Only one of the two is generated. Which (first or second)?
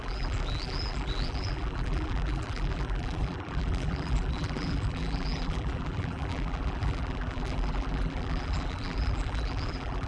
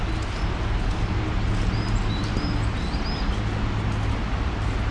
first